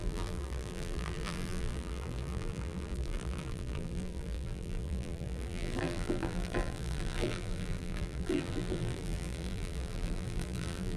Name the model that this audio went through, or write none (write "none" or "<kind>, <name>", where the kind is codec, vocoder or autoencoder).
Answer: vocoder, BigVGAN v2